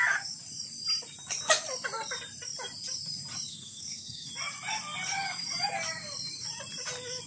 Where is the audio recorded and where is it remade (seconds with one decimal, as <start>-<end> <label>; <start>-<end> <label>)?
0.0-3.5 recorded; 3.5-4.3 remade; 4.3-7.3 recorded